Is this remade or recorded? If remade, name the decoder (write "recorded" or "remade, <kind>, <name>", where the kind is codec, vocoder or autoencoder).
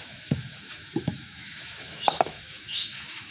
remade, autoencoder, DAC-VAE